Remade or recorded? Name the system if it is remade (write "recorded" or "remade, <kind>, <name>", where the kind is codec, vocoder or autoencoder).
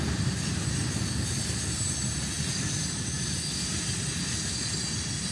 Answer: recorded